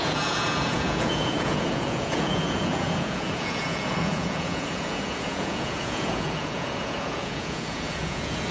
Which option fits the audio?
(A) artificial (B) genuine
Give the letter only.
A